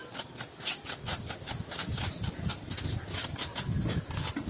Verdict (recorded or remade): recorded